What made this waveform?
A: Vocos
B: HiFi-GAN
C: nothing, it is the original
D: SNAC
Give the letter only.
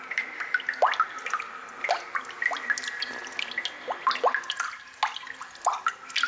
C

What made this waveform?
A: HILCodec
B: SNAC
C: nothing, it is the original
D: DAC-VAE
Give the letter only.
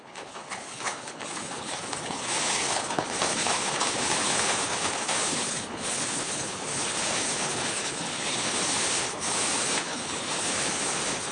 A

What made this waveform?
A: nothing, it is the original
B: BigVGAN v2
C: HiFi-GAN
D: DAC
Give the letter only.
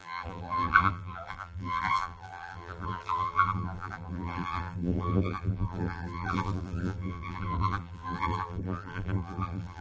B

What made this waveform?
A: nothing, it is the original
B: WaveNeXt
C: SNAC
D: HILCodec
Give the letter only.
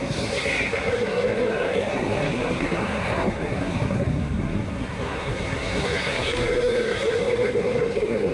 C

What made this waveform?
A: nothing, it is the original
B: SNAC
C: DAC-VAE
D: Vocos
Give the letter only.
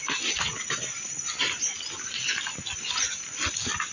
A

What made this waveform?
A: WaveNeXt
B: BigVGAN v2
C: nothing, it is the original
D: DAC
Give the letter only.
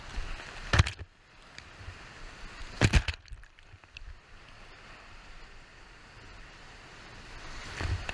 C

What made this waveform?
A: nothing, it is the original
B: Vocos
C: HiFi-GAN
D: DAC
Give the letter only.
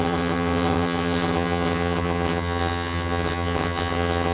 C